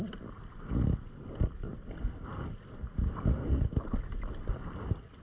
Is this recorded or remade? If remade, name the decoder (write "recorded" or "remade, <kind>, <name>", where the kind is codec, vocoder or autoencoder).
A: recorded